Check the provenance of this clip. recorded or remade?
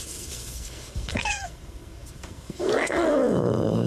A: remade